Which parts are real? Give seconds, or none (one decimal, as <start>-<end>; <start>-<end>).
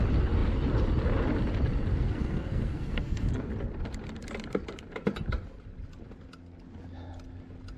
0.0-1.9; 3.5-7.8